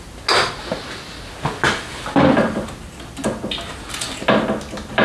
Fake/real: real